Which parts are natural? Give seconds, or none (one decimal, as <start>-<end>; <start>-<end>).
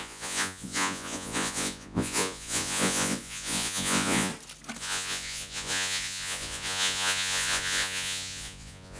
4.3-4.8